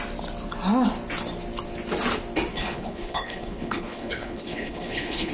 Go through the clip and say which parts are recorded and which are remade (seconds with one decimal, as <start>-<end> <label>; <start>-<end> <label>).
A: 0.0-2.5 recorded; 2.5-5.3 remade